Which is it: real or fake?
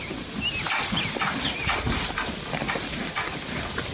real